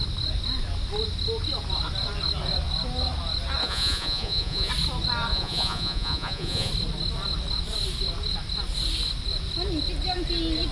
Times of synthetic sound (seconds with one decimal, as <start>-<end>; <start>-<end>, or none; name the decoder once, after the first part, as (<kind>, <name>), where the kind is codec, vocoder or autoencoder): 3.6-4.7 (vocoder, Vocos); 5.3-6.7

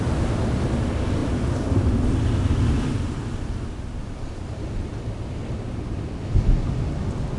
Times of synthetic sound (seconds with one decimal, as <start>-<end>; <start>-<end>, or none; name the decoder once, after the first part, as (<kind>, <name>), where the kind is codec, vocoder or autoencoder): none

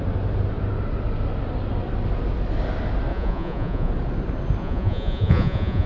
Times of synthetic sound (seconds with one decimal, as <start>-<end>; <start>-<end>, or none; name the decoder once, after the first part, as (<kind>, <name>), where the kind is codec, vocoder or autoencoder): 3.1-3.9 (vocoder, Vocos); 4.6-5.9

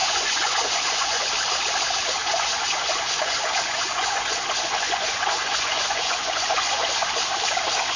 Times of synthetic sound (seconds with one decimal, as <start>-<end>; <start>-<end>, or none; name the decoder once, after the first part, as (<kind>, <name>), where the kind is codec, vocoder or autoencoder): 0.0-1.3 (vocoder, Vocos); 2.2-7.0

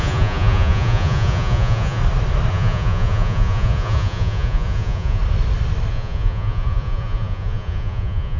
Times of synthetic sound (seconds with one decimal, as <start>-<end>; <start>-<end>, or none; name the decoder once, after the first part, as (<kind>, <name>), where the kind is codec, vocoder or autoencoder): 0.0-2.0 (vocoder, Vocos); 2.5-5.2; 5.9-8.4

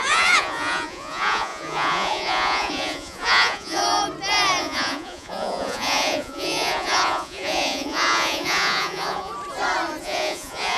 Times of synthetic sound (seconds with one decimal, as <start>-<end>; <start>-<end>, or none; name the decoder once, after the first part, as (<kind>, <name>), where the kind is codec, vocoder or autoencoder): 0.0-3.8 (vocoder, Vocos); 4.6-9.3; 10.0-10.8

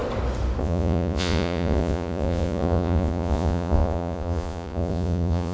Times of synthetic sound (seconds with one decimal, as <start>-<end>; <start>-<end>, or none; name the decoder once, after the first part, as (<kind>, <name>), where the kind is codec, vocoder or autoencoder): 0.6-5.5 (vocoder, Vocos)